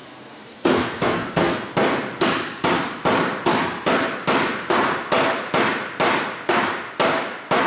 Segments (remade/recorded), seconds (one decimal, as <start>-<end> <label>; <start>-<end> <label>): 0.0-1.7 remade; 1.7-7.7 recorded